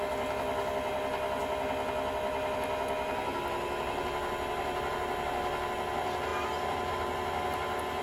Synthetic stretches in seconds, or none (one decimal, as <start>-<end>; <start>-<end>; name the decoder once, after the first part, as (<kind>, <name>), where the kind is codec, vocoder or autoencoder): none